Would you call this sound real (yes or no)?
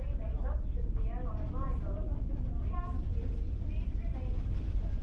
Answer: yes